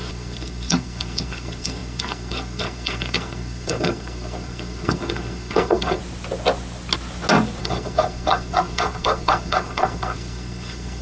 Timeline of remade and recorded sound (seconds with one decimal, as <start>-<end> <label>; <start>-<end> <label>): 0.0-6.0 remade; 6.0-7.6 recorded; 7.6-11.0 remade